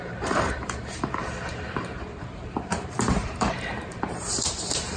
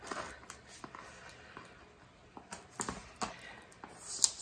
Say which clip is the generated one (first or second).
first